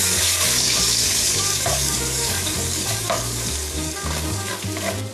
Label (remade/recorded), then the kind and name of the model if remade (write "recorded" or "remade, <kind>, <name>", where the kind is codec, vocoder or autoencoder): remade, codec, DAC